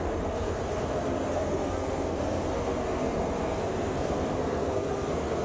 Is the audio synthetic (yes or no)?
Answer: yes